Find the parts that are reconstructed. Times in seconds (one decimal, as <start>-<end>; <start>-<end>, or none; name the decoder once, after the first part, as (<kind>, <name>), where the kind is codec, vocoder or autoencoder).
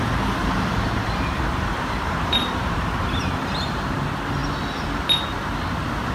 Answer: 0.4-3.2 (vocoder, BigVGAN v2)